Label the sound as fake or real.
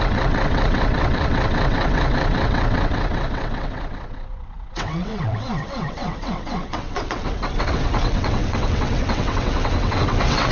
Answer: fake